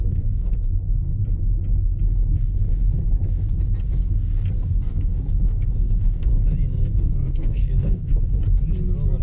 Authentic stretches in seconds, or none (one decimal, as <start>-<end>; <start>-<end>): 1.1-4.8; 6.3-7.0; 8.1-9.2